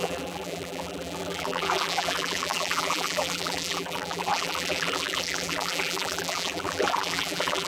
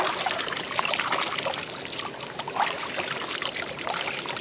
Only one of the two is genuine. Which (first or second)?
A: second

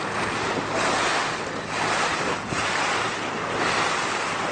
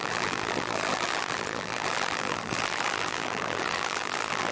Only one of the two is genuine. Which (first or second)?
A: first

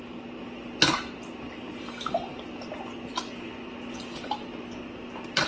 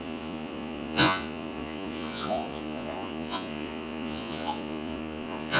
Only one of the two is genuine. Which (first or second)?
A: first